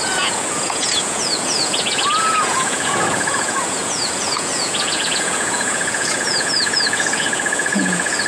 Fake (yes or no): yes